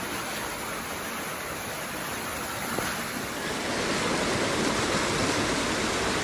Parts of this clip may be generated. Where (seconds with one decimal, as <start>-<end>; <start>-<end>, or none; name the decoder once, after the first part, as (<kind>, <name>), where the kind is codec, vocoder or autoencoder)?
none